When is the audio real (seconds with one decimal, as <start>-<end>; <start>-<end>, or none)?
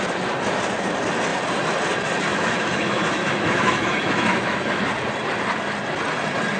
0.0-2.3; 4.8-6.6